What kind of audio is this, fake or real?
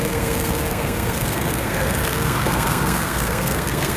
fake